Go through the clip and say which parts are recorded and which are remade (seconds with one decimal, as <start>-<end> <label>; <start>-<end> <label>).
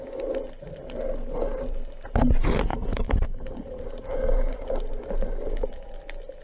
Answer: 0.0-2.7 recorded; 2.7-6.0 remade; 6.0-6.4 recorded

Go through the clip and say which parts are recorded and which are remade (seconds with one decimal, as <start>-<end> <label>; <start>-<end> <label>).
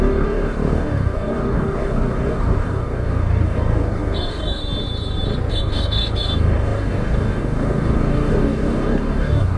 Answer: 0.0-4.6 remade; 4.6-5.5 recorded; 5.5-9.6 remade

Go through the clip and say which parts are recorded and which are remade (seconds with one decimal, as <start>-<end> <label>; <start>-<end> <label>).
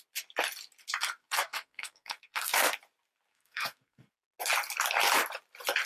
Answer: 0.0-1.2 recorded; 1.2-2.8 remade; 2.8-3.3 recorded; 3.3-4.1 remade; 4.1-5.9 recorded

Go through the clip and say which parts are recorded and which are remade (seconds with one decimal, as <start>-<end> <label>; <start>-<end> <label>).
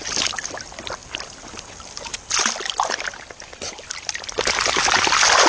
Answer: 0.0-5.5 recorded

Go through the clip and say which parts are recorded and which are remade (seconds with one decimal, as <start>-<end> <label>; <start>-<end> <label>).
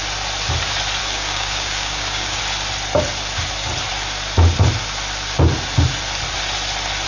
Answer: 0.0-1.0 recorded; 1.0-2.4 remade; 2.4-7.1 recorded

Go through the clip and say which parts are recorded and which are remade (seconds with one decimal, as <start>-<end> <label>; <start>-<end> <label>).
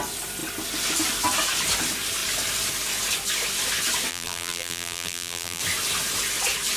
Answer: 0.0-4.1 recorded; 4.1-5.6 remade; 5.6-6.8 recorded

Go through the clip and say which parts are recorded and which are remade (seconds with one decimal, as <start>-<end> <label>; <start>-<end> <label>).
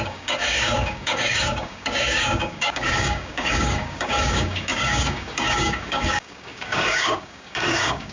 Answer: 0.0-8.1 remade